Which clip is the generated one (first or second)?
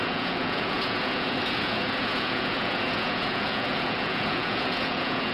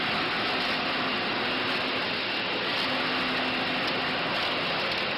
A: first